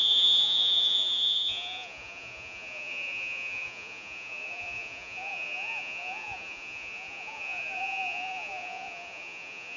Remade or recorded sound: remade